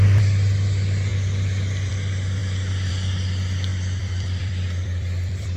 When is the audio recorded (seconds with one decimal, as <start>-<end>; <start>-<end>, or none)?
0.0-3.7